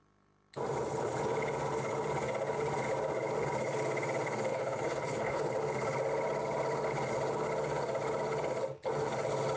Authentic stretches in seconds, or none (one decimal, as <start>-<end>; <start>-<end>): 0.0-4.5; 5.5-9.6